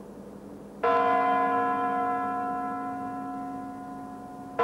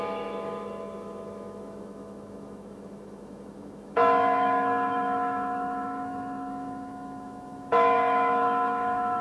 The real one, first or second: first